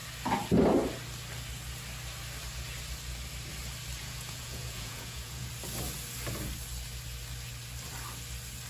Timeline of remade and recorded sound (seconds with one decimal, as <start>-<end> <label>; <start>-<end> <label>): 0.0-4.0 recorded; 4.0-5.5 remade; 5.5-8.7 recorded